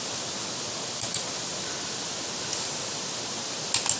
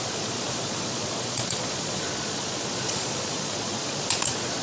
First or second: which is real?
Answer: first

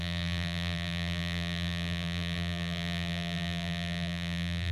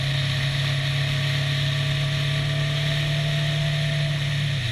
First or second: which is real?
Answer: second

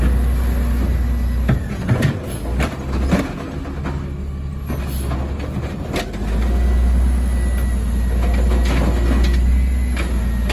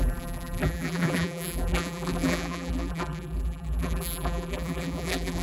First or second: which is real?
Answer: first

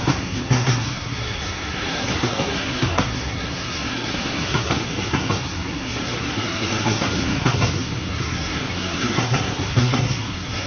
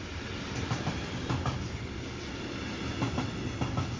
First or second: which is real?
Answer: second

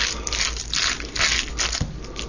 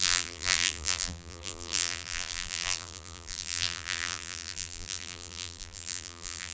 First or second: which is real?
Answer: first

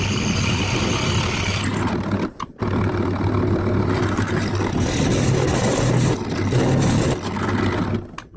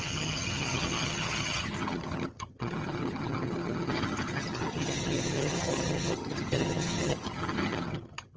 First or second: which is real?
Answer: first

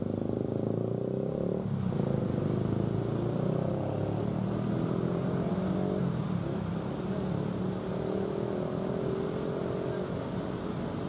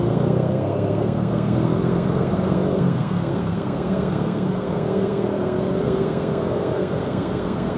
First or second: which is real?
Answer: first